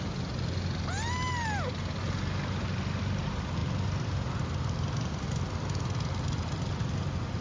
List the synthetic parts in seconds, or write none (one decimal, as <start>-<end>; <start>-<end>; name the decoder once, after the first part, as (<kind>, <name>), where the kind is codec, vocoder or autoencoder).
none